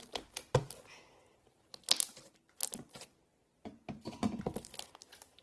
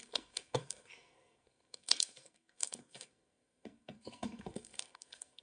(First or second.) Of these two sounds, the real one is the first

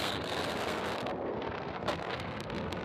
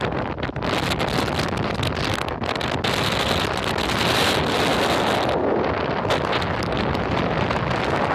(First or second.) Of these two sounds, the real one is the second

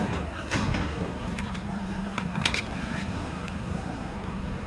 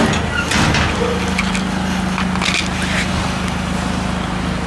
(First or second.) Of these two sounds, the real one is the second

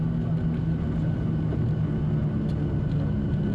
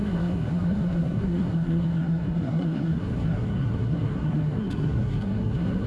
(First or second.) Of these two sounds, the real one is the first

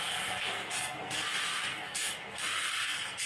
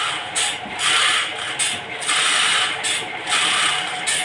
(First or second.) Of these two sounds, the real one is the second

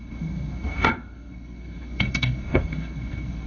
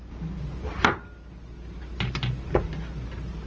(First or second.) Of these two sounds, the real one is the second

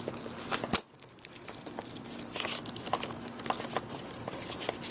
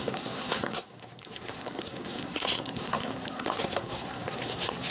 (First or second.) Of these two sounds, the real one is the first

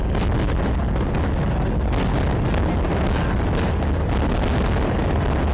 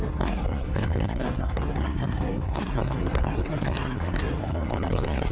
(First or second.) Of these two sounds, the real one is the first